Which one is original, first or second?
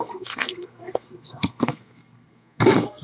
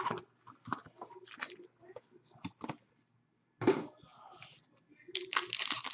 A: second